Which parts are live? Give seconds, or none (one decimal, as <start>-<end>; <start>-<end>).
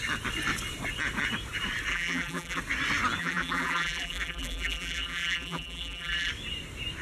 0.0-1.9; 2.6-3.2; 6.3-7.0